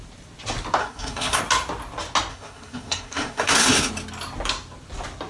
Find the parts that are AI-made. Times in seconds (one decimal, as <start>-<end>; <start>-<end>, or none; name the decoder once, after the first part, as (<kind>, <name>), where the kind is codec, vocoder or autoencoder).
0.8-1.4 (codec, SNAC); 2.3-3.9